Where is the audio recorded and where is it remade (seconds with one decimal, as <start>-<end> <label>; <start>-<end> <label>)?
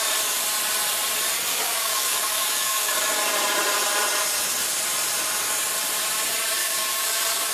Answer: 0.0-1.5 recorded; 1.5-3.1 remade; 3.1-6.6 recorded; 6.6-7.5 remade